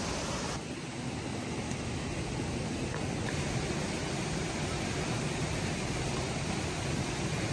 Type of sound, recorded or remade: recorded